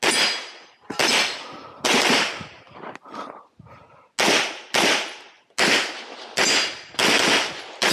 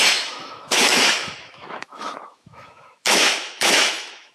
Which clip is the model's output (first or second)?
second